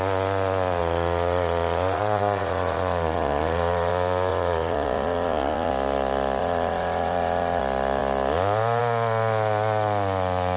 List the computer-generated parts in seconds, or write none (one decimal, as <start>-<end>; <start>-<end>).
0.8-3.9; 4.3-5.7; 6.4-7.6